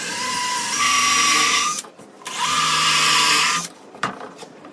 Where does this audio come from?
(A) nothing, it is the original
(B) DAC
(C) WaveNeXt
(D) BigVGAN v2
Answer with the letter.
D